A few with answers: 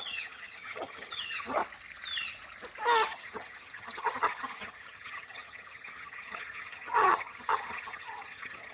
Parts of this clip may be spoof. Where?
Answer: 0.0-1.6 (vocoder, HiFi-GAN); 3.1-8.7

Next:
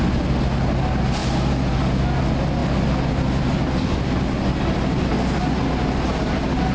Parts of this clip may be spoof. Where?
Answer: none

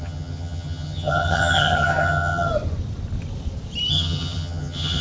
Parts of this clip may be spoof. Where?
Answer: 0.0-2.5 (vocoder, HiFi-GAN); 3.9-5.0

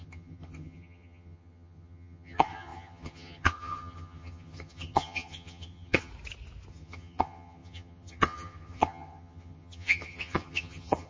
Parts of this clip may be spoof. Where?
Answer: 0.0-6.1 (vocoder, HiFi-GAN); 6.7-11.1